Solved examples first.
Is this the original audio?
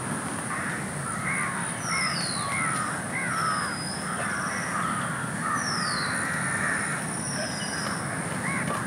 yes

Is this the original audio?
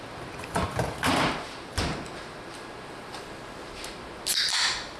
yes